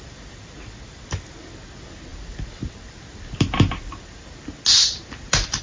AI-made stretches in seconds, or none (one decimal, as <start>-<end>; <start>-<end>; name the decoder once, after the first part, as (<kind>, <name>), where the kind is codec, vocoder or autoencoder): none